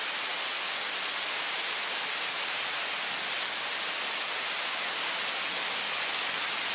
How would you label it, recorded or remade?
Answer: recorded